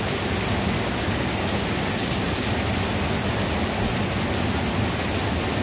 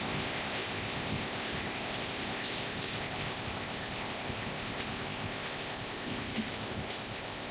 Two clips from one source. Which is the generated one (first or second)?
second